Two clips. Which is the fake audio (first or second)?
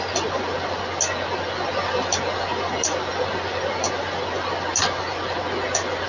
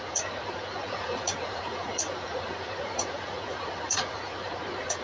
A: second